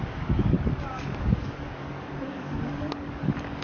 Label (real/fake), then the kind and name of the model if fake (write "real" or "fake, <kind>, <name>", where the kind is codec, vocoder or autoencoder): fake, codec, DAC